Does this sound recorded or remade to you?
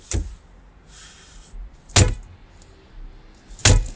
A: recorded